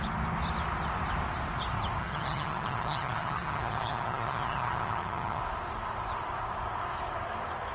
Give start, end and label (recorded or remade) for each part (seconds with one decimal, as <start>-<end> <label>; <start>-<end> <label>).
0.0-2.0 recorded; 2.0-5.4 remade; 5.4-7.7 recorded

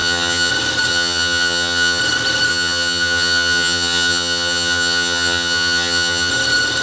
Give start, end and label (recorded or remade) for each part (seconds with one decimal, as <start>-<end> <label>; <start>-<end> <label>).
0.0-0.5 remade; 0.5-0.9 recorded; 0.9-2.0 remade; 2.0-2.5 recorded; 2.5-6.3 remade; 6.3-6.8 recorded

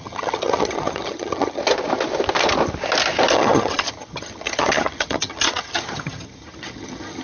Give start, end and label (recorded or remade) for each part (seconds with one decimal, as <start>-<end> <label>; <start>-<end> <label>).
0.0-1.6 remade; 1.6-3.3 recorded; 3.3-7.2 remade

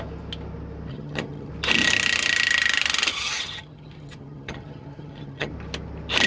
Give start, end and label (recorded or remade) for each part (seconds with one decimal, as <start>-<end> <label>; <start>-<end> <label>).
0.0-0.9 recorded; 0.9-1.5 remade; 1.5-3.1 recorded; 3.1-5.5 remade; 5.5-6.3 recorded

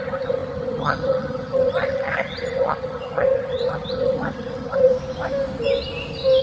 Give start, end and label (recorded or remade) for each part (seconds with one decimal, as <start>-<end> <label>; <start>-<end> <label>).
0.0-4.9 remade; 4.9-6.4 recorded